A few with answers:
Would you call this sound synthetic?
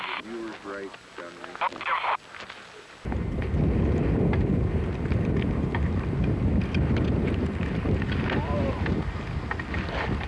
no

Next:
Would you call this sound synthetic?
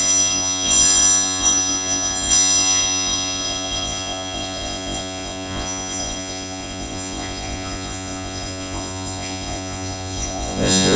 yes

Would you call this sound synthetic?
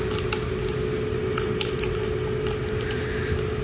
no